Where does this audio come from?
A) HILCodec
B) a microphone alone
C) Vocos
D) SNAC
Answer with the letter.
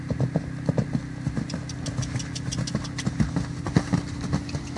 B